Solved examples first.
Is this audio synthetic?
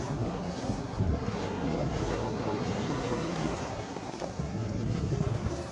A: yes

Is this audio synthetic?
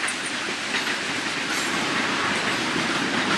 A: no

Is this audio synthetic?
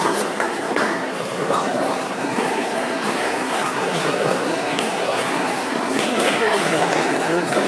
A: yes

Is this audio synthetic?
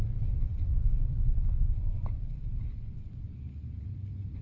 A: no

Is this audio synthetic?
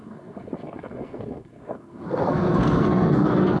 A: yes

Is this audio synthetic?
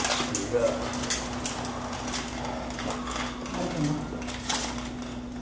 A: no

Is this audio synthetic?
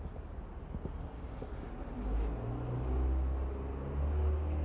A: no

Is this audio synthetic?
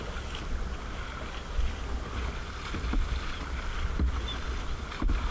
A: no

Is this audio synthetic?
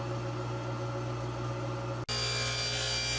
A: no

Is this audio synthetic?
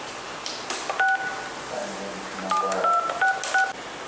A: no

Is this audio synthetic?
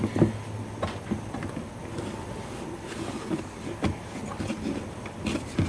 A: no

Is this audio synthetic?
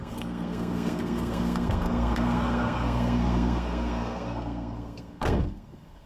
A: yes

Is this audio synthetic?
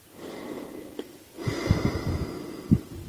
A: no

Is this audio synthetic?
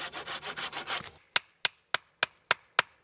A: no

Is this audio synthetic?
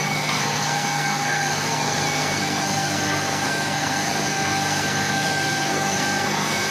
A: yes